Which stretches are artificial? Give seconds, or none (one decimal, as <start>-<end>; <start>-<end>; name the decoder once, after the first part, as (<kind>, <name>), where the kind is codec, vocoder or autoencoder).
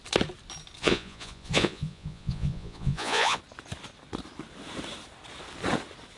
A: 0.8-3.4 (vocoder, Vocos)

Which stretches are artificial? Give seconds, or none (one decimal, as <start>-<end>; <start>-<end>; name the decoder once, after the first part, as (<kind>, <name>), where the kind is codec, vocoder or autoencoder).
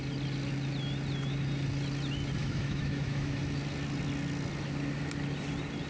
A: 2.4-3.4 (autoencoder, DAC-VAE)